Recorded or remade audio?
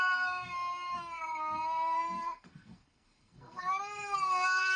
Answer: remade